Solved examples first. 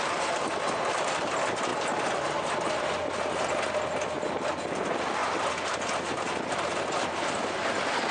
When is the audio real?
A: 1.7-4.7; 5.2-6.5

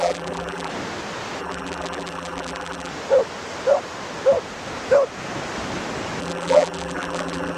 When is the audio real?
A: 0.7-1.4; 2.9-6.2